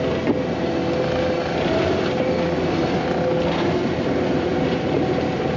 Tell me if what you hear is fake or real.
real